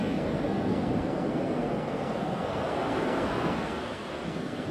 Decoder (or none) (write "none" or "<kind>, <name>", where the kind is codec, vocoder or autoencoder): codec, SNAC